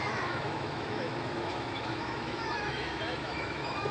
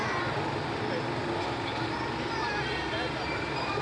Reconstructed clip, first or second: first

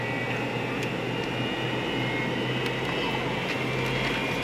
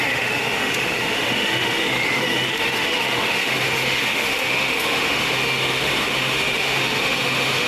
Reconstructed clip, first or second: second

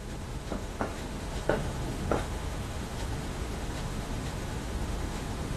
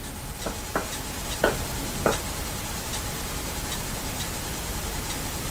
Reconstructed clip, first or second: first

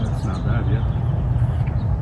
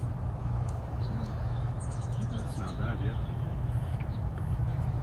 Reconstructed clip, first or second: second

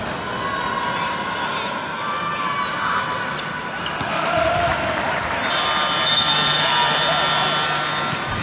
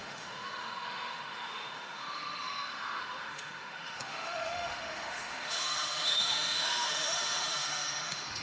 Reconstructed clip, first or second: second